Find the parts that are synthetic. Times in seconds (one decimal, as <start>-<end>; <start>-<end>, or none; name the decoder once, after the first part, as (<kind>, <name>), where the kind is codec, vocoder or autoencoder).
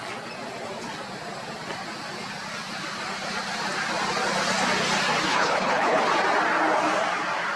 5.3-6.0 (codec, HILCodec)